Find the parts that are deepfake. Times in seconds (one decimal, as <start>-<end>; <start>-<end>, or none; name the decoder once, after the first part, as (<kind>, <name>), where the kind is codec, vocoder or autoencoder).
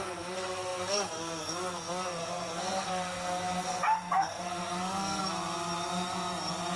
0.0-5.2 (codec, SNAC)